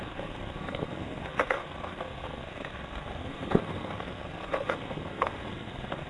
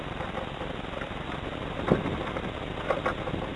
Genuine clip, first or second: second